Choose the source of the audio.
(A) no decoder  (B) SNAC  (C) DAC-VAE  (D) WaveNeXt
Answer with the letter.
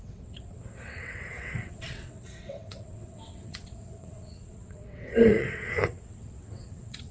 D